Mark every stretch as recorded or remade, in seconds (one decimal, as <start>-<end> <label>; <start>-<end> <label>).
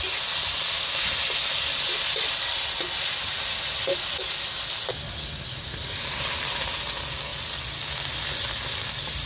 0.0-9.3 recorded